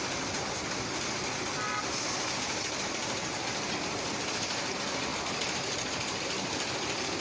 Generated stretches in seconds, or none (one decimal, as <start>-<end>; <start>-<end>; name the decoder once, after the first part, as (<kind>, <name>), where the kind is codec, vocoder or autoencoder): 0.0-3.0 (vocoder, BigVGAN v2); 3.8-7.2